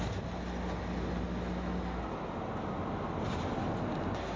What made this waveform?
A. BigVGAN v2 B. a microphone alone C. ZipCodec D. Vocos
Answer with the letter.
B